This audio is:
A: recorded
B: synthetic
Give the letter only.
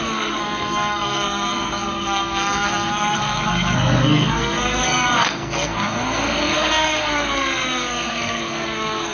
B